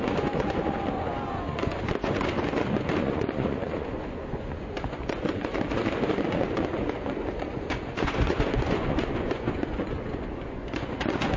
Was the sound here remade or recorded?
remade